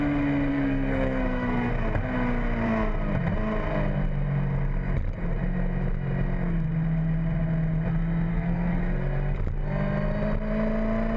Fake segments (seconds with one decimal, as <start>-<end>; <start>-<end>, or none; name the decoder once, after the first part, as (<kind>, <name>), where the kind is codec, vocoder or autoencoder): 0.5-1.7 (codec, SNAC); 8.3-8.8